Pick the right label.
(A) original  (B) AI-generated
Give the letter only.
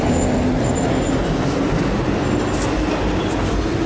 A